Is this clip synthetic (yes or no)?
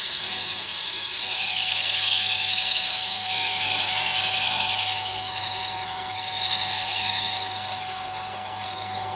yes